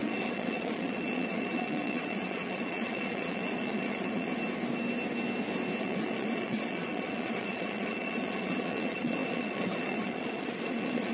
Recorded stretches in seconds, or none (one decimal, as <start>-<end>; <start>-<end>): 4.3-5.8